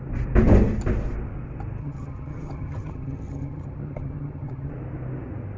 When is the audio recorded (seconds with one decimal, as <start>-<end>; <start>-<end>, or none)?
0.0-1.8; 4.7-5.6